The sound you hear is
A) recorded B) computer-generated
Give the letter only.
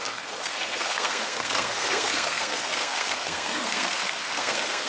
B